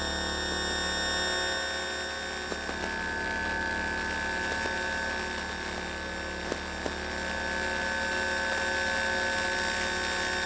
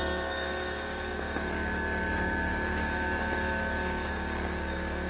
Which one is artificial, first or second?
second